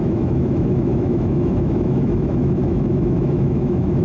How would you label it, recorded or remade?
remade